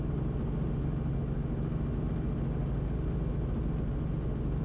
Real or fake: real